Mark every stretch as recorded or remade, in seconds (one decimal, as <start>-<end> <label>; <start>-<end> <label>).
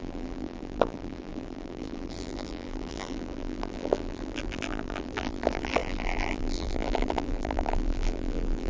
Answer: 0.0-8.7 remade